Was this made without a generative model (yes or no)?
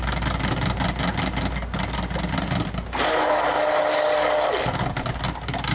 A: yes